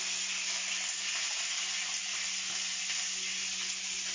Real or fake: real